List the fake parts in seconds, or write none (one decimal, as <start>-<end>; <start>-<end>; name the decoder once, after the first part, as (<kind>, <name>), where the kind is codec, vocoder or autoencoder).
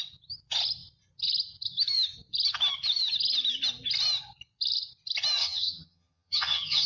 5.4-6.9 (vocoder, HiFi-GAN)